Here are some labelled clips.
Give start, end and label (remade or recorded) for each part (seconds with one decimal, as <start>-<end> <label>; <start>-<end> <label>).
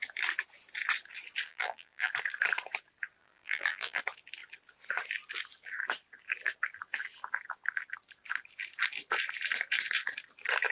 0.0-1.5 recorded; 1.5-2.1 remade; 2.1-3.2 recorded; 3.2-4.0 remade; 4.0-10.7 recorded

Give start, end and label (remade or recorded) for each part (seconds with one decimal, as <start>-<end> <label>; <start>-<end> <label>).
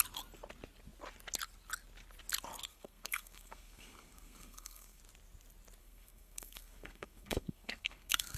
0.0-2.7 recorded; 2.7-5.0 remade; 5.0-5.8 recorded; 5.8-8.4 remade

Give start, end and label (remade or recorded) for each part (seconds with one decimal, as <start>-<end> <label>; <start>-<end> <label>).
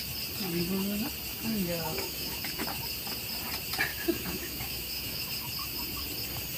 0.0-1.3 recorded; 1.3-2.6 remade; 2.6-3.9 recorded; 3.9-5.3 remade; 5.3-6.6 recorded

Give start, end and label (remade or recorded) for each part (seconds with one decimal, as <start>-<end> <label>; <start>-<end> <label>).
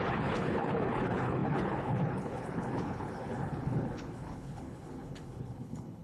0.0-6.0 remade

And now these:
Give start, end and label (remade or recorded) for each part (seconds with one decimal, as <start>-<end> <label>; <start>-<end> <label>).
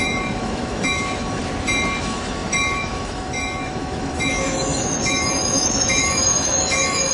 0.0-1.4 remade; 1.4-2.0 recorded; 2.0-7.1 remade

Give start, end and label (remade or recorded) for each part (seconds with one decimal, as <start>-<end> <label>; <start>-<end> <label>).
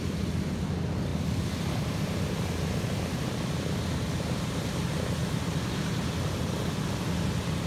0.0-5.2 recorded; 5.2-6.6 remade; 6.6-7.7 recorded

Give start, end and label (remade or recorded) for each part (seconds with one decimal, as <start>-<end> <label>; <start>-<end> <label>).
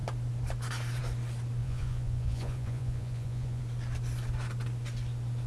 0.0-1.6 recorded; 1.6-3.6 remade; 3.6-5.5 recorded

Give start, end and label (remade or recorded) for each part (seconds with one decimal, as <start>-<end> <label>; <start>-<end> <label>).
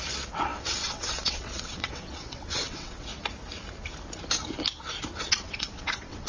0.0-3.1 remade; 3.1-5.2 recorded; 5.2-6.3 remade